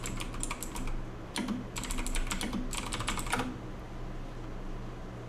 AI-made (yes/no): no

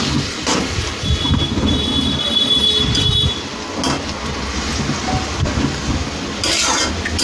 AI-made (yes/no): no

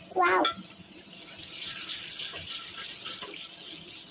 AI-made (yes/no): no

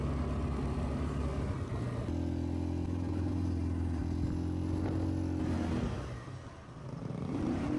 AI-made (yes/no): no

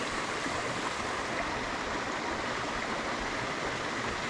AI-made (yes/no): no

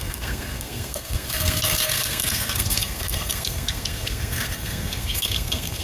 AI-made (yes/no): yes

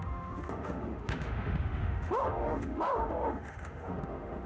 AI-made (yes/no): yes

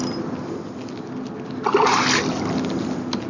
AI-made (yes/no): no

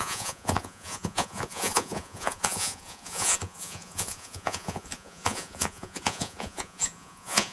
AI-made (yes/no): yes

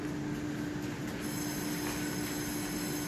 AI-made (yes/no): no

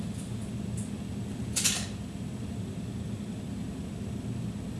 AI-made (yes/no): no